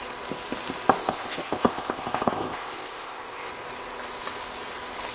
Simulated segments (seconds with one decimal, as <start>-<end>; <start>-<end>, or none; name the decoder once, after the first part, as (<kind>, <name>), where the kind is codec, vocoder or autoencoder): 1.0-3.5 (codec, ZipCodec)

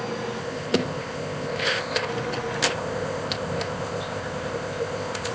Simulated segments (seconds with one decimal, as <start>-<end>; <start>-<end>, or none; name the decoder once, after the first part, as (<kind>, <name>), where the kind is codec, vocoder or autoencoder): 0.4-2.1 (codec, ZipCodec); 2.7-5.3

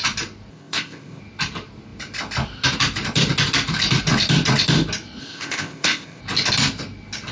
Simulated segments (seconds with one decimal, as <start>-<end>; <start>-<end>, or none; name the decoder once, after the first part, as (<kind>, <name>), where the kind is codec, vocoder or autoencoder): 0.5-1.2 (codec, ZipCodec); 5.2-6.2

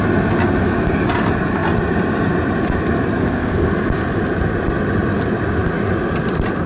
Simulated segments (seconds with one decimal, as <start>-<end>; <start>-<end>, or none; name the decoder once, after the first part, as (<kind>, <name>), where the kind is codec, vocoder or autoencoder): 3.2-3.7 (codec, ZipCodec)

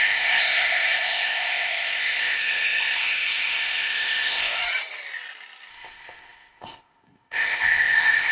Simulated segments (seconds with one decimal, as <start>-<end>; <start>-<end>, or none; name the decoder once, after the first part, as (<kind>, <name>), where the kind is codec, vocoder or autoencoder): 0.0-4.6 (codec, ZipCodec); 5.7-8.3

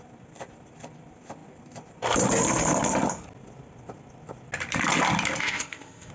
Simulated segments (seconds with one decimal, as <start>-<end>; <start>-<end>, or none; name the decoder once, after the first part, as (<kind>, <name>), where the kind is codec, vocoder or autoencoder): 5.4-6.1 (codec, ZipCodec)

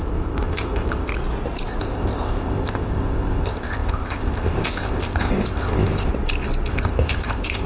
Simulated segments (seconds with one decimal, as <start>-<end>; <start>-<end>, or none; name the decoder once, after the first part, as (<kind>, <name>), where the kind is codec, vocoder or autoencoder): 0.0-1.1 (codec, ZipCodec); 1.8-6.1; 6.7-7.7

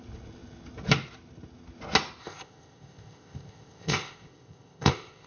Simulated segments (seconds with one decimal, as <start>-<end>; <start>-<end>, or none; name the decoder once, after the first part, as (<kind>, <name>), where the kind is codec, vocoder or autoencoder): 2.2-5.3 (codec, ZipCodec)